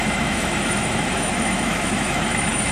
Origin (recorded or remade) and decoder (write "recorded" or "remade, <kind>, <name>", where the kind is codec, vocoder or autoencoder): remade, autoencoder, DAC-VAE